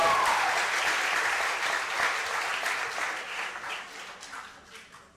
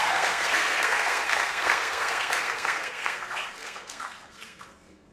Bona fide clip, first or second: first